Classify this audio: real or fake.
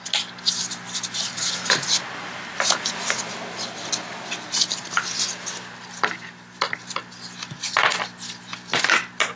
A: real